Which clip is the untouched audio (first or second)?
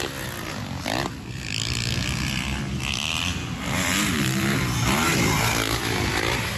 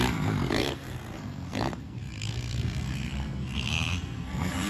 first